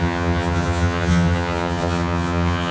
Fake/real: fake